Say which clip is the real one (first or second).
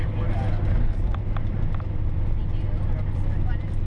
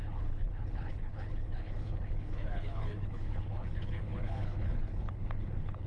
first